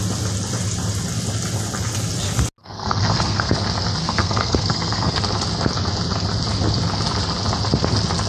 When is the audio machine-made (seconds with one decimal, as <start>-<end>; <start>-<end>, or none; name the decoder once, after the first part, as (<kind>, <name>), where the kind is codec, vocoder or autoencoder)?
2.6-3.5 (codec, SNAC); 4.0-5.2